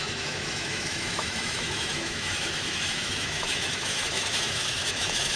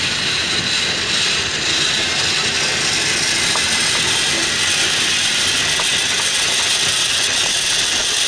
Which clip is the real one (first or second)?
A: second